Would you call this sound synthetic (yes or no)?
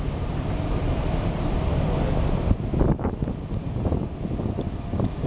no